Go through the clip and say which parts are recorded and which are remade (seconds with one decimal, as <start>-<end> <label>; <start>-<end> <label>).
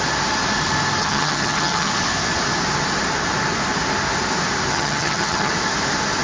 0.0-1.0 recorded; 1.0-1.9 remade; 1.9-4.7 recorded; 4.7-5.5 remade; 5.5-6.2 recorded